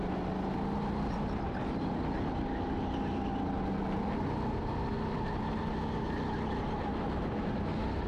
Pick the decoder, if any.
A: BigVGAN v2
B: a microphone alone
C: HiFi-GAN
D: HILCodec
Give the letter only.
B